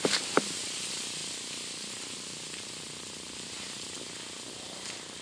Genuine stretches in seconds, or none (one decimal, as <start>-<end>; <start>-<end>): 0.0-5.2